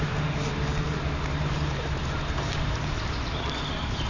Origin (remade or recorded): remade